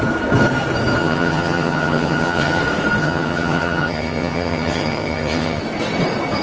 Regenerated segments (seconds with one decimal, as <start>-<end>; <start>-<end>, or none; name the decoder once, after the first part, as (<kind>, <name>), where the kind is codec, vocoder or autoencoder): 1.0-2.6 (vocoder, HiFi-GAN); 3.0-5.6